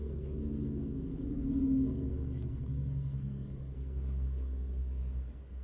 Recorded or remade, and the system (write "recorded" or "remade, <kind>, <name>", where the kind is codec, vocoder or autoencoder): remade, codec, SNAC